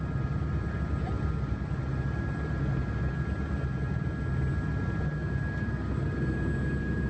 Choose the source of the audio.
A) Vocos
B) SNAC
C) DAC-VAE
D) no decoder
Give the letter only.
D